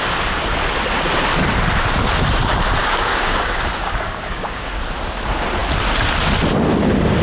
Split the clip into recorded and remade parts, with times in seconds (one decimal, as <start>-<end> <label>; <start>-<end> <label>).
0.0-2.8 recorded; 2.8-4.7 remade; 4.7-7.2 recorded